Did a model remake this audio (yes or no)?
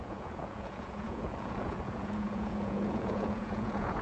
yes